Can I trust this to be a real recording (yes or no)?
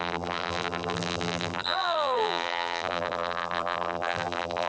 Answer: no